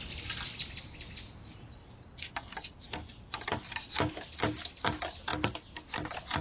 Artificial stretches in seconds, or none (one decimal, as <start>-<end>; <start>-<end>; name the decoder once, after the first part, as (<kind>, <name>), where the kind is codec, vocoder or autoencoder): none